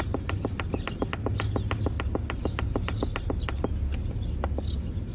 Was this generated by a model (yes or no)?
no